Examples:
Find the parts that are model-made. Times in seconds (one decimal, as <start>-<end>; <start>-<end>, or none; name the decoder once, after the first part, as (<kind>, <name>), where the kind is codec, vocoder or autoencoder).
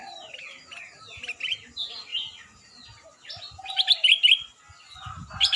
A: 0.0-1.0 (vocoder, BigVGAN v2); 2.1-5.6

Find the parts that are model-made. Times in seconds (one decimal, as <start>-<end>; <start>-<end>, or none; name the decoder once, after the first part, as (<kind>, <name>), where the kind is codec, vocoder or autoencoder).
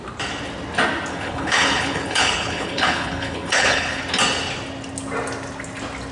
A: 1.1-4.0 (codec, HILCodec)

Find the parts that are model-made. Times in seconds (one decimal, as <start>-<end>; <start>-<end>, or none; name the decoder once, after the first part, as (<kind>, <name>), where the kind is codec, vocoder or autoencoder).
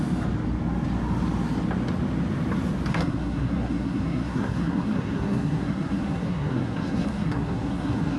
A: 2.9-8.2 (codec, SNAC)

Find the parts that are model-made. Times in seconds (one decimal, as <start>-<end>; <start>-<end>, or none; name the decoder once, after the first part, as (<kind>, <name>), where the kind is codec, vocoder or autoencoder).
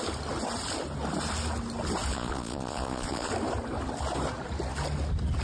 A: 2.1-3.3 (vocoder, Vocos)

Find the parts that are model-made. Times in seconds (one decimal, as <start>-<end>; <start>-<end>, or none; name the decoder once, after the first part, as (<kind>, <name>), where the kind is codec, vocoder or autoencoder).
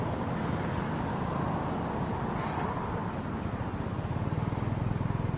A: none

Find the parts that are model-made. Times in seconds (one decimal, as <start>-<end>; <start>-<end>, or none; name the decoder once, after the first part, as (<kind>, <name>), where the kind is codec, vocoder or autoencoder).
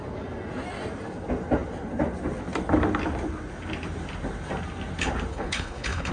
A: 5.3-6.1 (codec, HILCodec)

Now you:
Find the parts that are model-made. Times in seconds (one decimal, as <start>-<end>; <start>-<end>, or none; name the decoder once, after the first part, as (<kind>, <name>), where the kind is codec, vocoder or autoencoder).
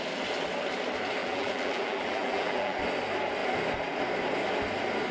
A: 1.2-2.8 (vocoder, BigVGAN v2)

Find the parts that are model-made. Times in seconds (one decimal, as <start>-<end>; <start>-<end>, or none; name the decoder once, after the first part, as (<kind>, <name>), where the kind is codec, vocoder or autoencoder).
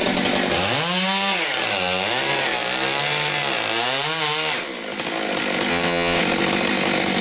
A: 5.7-6.2 (vocoder, WaveNeXt)